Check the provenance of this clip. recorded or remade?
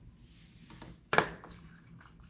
recorded